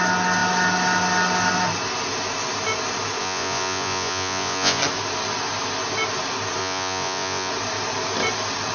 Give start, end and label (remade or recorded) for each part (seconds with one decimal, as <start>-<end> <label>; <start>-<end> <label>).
0.0-3.2 recorded; 3.2-4.8 remade; 4.8-6.6 recorded; 6.6-7.5 remade; 7.5-8.7 recorded